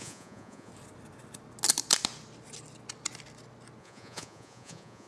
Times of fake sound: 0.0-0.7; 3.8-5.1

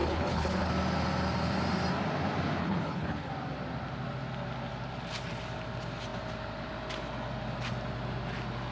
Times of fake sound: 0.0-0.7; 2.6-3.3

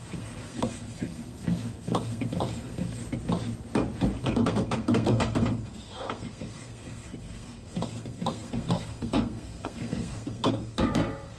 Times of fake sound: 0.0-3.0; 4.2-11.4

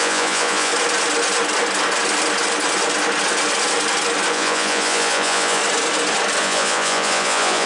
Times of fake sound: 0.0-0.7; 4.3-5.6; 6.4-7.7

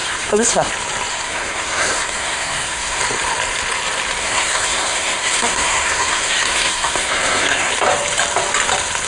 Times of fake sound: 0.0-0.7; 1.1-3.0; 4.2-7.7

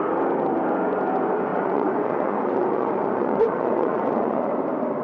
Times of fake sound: 1.5-4.5